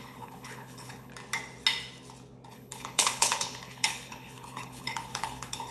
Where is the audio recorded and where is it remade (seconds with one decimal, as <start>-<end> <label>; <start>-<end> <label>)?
0.0-1.1 remade; 1.1-2.5 recorded; 2.5-5.7 remade